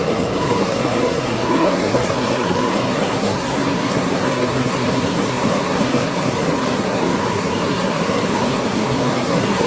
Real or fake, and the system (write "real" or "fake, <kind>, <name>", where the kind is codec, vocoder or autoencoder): fake, codec, SNAC